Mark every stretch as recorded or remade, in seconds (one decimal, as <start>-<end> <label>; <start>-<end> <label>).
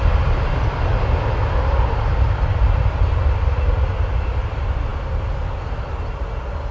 0.0-6.7 recorded